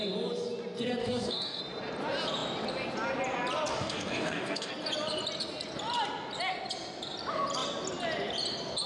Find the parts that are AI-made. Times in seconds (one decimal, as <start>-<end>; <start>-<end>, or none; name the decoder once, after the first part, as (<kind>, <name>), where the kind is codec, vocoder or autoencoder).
1.0-1.6 (codec, DAC); 3.7-4.7